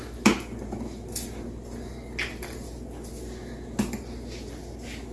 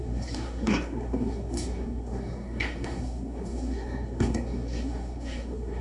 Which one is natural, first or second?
first